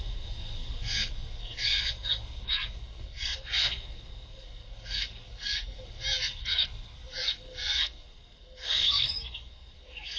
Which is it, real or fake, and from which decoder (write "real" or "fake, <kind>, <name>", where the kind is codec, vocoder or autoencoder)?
fake, codec, SNAC